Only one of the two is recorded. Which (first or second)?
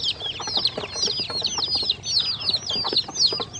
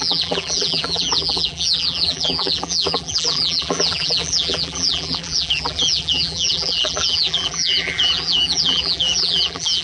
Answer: first